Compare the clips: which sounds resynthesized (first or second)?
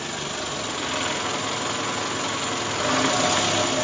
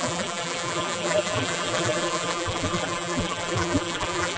second